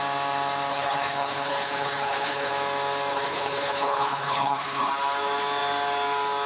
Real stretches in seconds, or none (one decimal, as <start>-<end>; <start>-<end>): 0.0-0.7; 2.5-3.1; 4.9-6.5